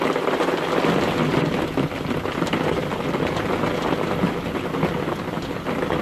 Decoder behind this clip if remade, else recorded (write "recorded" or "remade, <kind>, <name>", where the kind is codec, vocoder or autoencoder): recorded